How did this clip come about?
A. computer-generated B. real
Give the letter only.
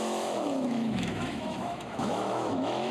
A